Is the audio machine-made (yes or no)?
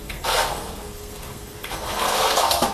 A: yes